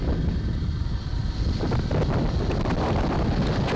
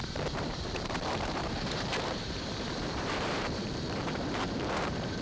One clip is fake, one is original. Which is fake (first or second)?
second